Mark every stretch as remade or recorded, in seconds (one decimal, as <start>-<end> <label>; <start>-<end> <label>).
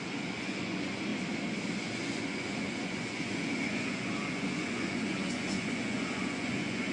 0.0-1.1 remade; 1.1-1.8 recorded; 1.8-6.9 remade